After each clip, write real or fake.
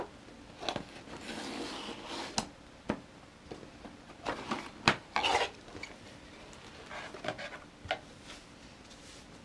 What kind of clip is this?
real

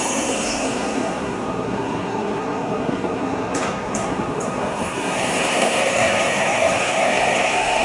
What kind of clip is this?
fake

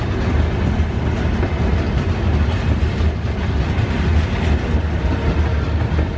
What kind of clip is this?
real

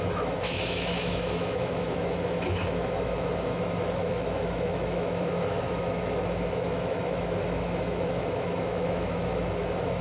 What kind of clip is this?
fake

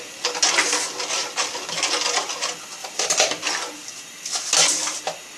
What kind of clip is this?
real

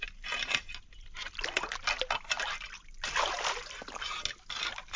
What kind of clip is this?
real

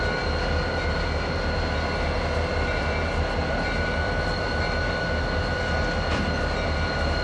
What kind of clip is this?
real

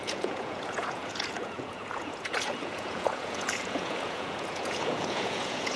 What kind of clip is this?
fake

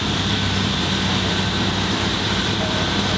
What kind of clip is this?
fake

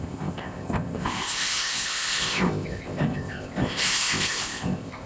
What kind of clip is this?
fake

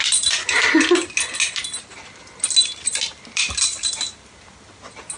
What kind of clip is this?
real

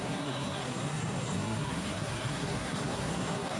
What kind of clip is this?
fake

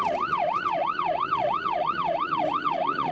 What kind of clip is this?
fake